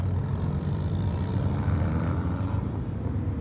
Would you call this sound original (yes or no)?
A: yes